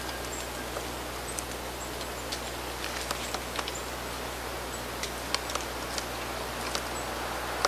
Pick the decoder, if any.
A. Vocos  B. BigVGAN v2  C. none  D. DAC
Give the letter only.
C